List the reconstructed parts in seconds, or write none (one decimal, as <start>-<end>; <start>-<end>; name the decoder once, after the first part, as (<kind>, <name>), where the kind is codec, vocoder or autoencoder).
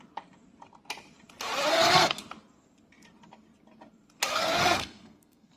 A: 1.7-2.2 (codec, SNAC); 4.3-5.6